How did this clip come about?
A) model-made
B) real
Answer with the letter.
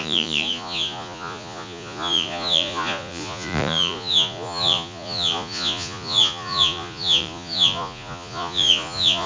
A